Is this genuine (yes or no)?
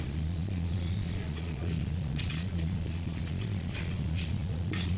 no